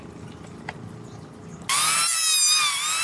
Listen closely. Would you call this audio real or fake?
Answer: real